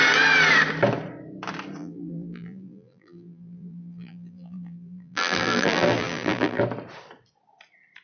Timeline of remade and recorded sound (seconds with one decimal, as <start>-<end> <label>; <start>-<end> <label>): 0.0-1.8 recorded; 1.8-6.6 remade; 6.6-8.0 recorded